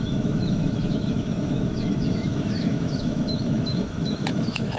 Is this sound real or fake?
fake